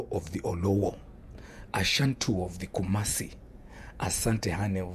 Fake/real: fake